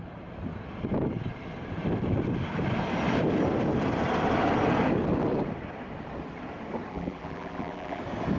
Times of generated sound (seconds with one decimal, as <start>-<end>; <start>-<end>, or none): 6.9-8.0